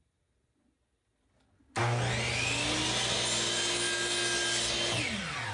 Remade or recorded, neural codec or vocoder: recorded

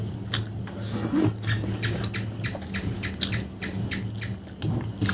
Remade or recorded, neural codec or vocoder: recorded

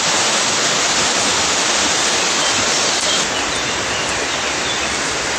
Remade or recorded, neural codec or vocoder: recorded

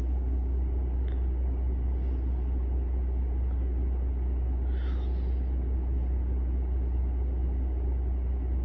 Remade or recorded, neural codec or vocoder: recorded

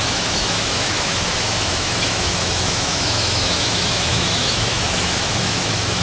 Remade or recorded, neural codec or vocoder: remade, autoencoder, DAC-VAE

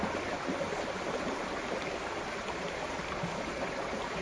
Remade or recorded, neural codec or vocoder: recorded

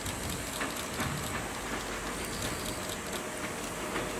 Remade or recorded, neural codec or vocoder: recorded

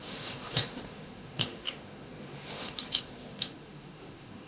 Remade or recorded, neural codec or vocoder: remade, autoencoder, DAC-VAE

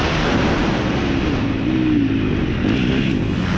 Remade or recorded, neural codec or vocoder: recorded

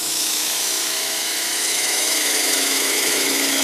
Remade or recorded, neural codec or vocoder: remade, autoencoder, DAC-VAE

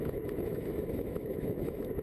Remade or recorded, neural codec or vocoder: remade, autoencoder, DAC-VAE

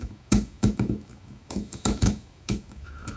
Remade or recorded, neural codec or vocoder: remade, autoencoder, DAC-VAE